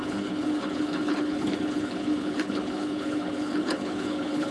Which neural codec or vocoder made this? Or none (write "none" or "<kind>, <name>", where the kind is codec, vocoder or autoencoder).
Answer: codec, HILCodec